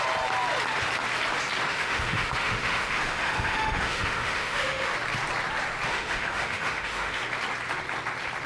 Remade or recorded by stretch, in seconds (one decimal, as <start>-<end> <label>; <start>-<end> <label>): 0.0-1.6 recorded; 1.6-4.9 remade; 4.9-5.9 recorded; 5.9-7.2 remade; 7.2-8.5 recorded